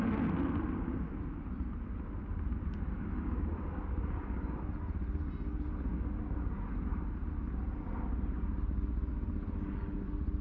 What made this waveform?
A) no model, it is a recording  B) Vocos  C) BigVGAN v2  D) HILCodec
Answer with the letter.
A